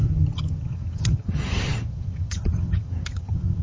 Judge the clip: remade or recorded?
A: remade